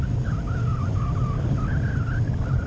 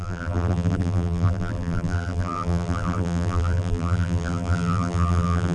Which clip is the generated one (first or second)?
second